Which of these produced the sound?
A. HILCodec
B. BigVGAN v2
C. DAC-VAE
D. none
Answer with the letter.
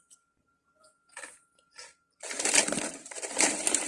D